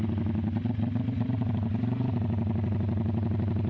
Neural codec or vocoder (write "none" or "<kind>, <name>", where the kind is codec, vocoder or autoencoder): none